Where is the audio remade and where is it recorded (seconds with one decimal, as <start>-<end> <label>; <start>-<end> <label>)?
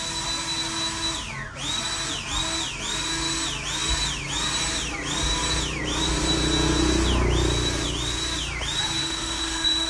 0.0-9.0 recorded; 9.0-9.9 remade